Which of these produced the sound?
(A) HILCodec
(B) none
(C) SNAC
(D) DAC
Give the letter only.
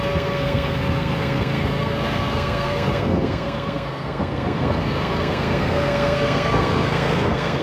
C